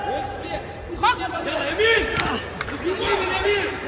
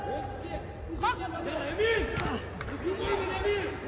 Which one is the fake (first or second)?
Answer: first